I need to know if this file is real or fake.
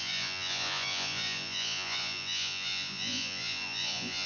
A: fake